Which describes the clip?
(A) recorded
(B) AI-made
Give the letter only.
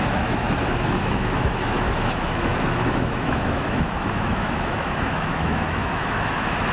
B